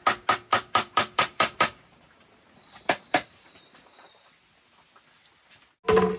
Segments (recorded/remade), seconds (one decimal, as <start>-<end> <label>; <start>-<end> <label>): 0.0-0.5 recorded; 0.5-3.5 remade; 3.5-6.2 recorded